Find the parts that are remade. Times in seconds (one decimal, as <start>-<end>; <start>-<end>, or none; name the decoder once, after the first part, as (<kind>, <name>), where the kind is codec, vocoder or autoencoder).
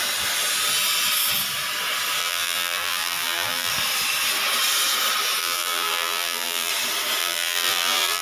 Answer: 2.2-3.7 (vocoder, BigVGAN v2); 5.4-6.7; 7.2-8.2